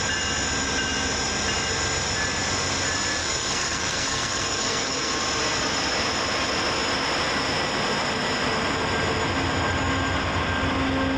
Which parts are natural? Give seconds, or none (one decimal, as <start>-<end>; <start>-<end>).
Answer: 0.0-3.2; 5.1-11.2